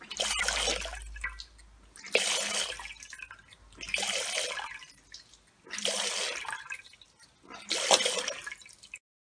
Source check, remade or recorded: recorded